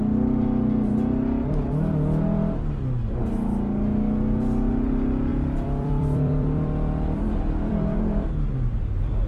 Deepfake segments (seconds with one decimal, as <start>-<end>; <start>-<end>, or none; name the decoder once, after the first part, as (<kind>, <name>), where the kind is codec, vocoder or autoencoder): 5.3-7.7 (vocoder, BigVGAN v2)